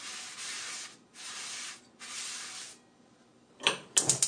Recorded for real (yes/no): yes